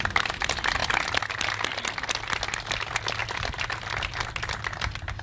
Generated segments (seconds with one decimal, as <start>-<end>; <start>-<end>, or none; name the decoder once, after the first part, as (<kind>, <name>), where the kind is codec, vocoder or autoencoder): none

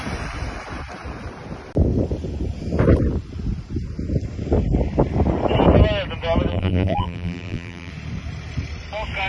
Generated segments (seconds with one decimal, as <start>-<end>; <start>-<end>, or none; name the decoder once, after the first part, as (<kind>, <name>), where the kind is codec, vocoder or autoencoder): 6.5-7.9 (vocoder, BigVGAN v2)

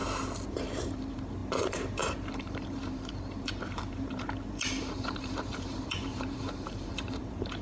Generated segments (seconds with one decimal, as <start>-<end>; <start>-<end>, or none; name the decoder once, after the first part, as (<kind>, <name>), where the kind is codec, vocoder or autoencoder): 0.5-7.6 (vocoder, BigVGAN v2)

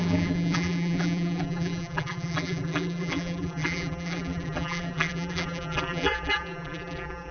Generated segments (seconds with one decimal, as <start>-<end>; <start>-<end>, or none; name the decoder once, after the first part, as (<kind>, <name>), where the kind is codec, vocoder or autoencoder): 0.0-7.3 (vocoder, BigVGAN v2)

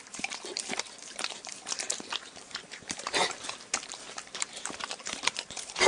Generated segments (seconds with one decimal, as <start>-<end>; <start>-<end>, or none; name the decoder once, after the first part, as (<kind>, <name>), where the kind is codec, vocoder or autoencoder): 0.0-5.9 (vocoder, BigVGAN v2)

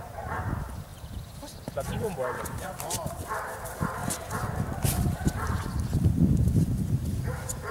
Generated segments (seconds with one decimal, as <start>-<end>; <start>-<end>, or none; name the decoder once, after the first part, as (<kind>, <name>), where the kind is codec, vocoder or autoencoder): 0.0-4.0 (vocoder, BigVGAN v2); 5.0-7.7